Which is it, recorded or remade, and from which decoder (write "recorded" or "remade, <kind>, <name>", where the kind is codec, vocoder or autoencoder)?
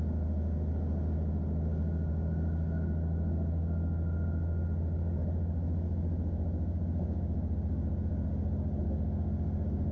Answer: recorded